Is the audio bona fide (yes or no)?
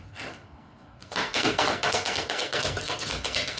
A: no